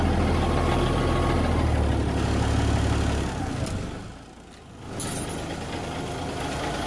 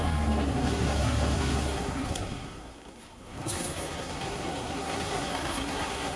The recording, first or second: first